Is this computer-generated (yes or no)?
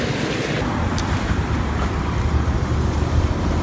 yes